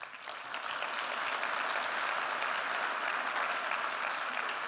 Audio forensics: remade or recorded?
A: recorded